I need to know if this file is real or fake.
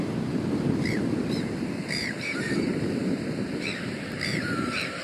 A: fake